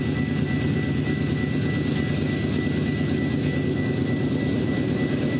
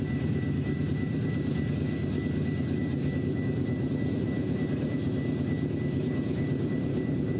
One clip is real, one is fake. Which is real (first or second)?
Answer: first